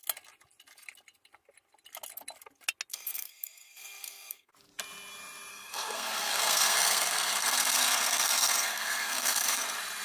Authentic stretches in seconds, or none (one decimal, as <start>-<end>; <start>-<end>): 0.0-2.9; 4.5-5.5; 9.6-10.0